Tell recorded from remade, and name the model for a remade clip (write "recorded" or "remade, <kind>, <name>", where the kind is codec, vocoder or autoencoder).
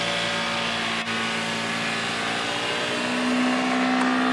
recorded